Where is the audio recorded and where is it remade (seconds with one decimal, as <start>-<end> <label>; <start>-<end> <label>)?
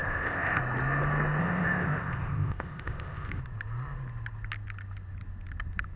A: 0.0-0.6 remade; 0.6-1.4 recorded; 1.4-3.4 remade; 3.4-6.0 recorded